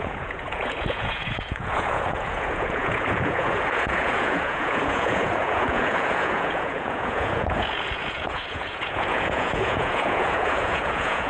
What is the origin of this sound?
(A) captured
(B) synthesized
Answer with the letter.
B